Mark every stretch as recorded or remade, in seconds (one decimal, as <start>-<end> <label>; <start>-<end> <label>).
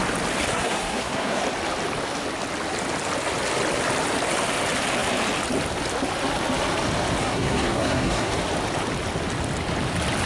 0.0-0.5 recorded; 0.5-1.4 remade; 1.4-7.2 recorded; 7.2-8.3 remade; 8.3-10.3 recorded